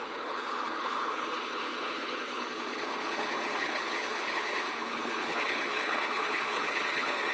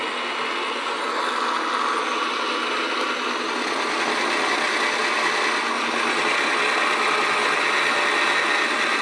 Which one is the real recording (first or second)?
second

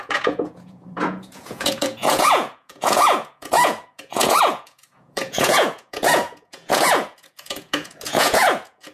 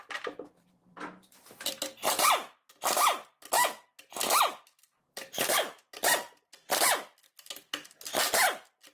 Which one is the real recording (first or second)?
second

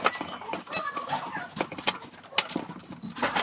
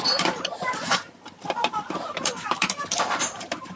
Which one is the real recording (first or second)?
first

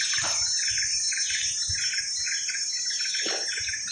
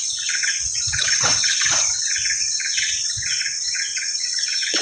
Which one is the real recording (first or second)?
first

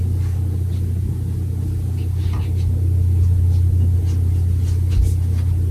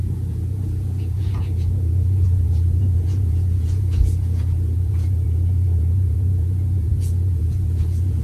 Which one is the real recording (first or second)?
first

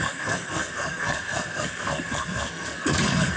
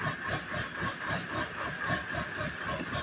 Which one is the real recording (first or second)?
second